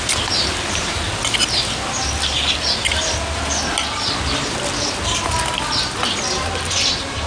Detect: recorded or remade recorded